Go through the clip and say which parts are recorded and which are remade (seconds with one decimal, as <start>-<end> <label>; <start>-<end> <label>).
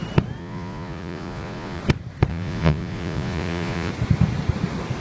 0.0-0.4 recorded; 0.4-1.8 remade; 1.8-2.3 recorded; 2.3-3.9 remade; 3.9-5.0 recorded